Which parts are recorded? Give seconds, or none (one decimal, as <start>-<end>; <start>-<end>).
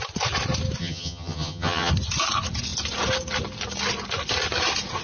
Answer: 0.0-0.8; 1.9-5.0